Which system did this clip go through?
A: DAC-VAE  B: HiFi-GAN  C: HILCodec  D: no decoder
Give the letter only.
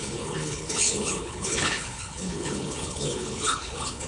C